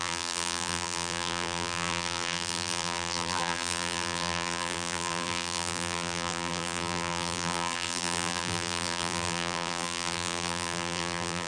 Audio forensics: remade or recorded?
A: remade